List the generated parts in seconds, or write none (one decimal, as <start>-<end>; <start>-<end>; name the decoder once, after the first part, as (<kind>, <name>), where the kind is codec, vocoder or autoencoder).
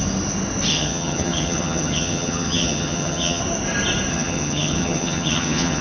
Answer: 0.7-3.4 (vocoder, HiFi-GAN); 4.1-5.8